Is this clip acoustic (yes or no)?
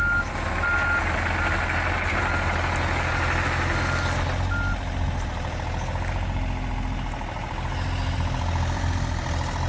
yes